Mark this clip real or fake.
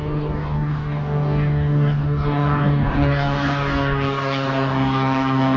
fake